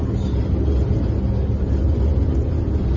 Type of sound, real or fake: real